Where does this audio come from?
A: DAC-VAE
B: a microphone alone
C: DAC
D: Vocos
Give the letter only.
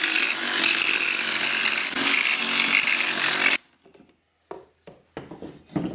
B